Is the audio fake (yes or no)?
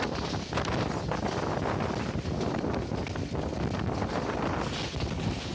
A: no